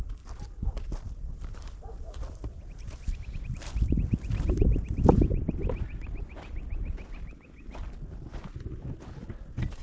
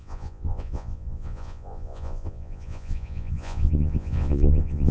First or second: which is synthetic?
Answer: second